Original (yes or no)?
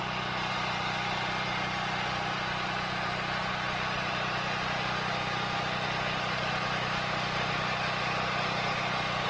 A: yes